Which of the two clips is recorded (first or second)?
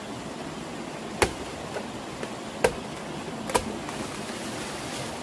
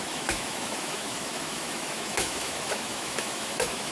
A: first